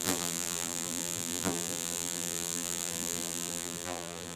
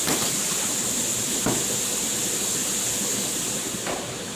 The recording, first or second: second